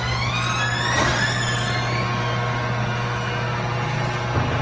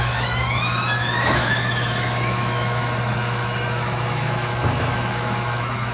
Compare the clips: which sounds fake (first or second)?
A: second